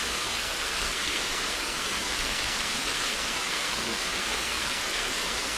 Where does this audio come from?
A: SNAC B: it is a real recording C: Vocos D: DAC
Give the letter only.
A